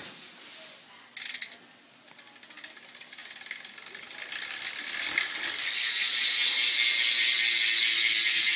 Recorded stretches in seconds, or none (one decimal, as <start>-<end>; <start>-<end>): 0.0-8.6